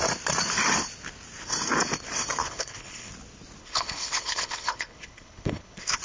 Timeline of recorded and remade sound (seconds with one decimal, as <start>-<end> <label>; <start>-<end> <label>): 0.0-2.4 recorded; 2.4-3.1 remade; 3.1-3.6 recorded; 3.6-6.0 remade